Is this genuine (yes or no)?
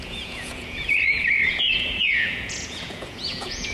no